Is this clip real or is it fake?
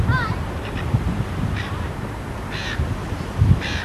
fake